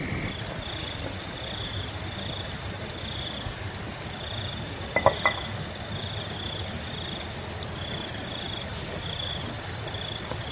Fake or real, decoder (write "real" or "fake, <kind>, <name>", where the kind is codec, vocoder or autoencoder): real